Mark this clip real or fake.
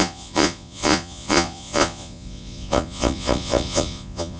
fake